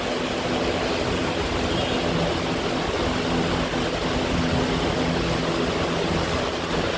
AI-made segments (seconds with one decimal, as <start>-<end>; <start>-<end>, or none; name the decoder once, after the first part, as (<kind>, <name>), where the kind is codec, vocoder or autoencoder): none

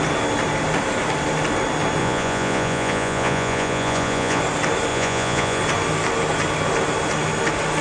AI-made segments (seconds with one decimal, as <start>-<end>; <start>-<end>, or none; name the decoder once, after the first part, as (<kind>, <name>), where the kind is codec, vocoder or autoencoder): 2.0-4.4 (vocoder, Vocos); 4.9-5.6

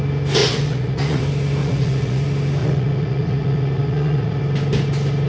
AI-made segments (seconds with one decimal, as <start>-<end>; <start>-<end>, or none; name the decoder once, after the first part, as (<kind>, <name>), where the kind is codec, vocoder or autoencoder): 0.4-1.2 (vocoder, Vocos); 1.6-2.2; 2.6-4.4

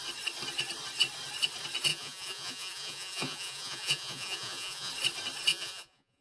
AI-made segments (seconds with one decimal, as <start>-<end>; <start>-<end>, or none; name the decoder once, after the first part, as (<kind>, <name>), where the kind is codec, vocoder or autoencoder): 1.9-4.9 (vocoder, Vocos); 5.5-6.2

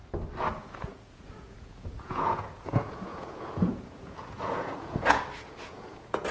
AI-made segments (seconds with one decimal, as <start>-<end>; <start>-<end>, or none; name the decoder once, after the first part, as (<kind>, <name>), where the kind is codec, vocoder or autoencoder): 0.6-6.3 (vocoder, Vocos)